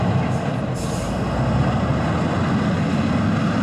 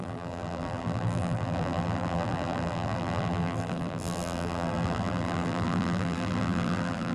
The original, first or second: first